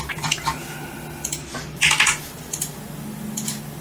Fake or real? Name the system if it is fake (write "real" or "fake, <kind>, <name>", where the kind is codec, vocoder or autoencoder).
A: real